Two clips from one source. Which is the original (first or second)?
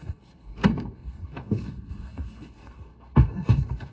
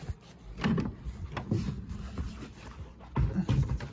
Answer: second